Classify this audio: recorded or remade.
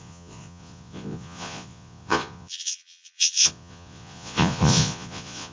remade